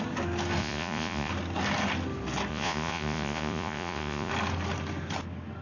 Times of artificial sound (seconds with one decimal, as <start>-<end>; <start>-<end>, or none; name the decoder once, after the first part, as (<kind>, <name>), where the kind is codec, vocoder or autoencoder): 0.6-1.3 (vocoder, Vocos); 2.5-4.3